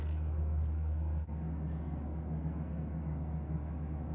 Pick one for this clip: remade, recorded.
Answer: remade